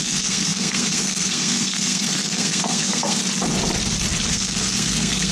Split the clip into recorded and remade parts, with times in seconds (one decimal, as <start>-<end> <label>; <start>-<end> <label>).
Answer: 0.0-3.2 remade; 3.2-4.3 recorded; 4.3-5.3 remade